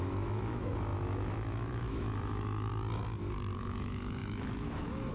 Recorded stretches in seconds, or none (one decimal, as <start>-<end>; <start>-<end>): 2.7-3.6